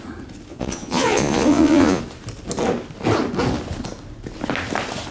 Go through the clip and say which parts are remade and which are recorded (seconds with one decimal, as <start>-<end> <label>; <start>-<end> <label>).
0.0-0.5 recorded; 0.5-2.0 remade; 2.0-5.1 recorded